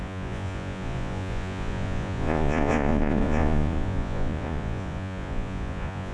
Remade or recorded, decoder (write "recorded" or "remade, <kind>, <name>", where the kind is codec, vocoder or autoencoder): remade, vocoder, Vocos